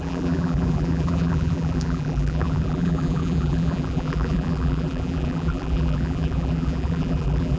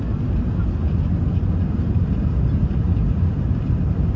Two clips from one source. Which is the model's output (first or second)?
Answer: first